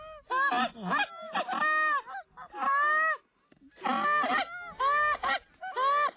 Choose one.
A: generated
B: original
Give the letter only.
B